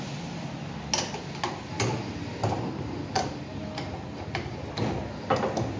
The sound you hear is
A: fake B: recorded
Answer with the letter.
B